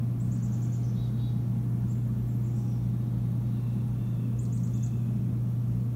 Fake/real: real